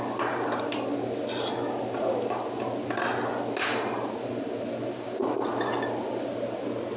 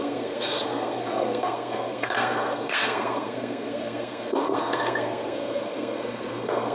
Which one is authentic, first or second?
first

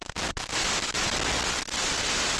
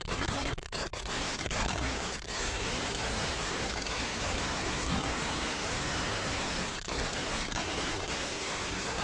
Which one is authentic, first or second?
first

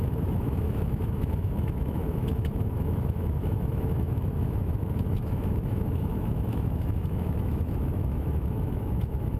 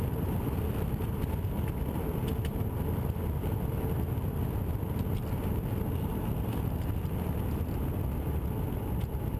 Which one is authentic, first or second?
second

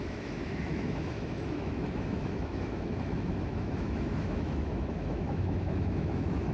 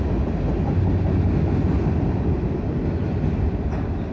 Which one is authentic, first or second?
second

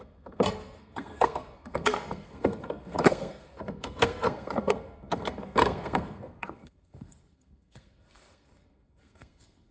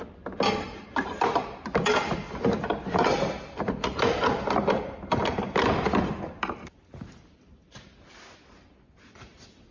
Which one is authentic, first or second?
second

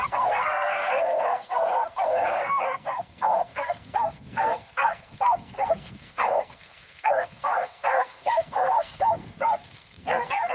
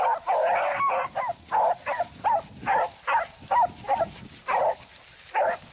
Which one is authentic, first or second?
second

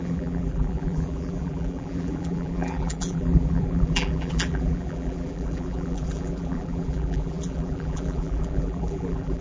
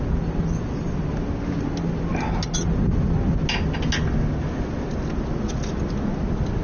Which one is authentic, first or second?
second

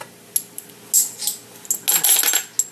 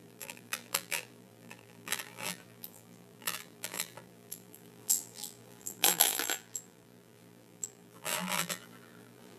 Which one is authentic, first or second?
first